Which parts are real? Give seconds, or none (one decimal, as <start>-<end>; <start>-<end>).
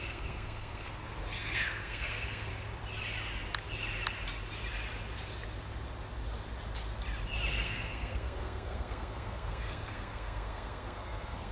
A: 2.5-7.5